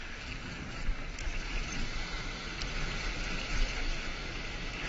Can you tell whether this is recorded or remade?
recorded